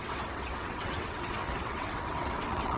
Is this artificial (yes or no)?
yes